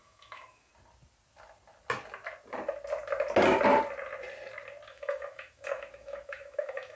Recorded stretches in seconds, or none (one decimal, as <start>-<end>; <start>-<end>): 0.7-4.9